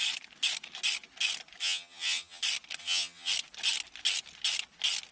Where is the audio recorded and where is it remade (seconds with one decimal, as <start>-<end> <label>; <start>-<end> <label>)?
0.0-1.6 recorded; 1.6-2.4 remade; 2.4-2.8 recorded; 2.8-3.3 remade; 3.3-5.1 recorded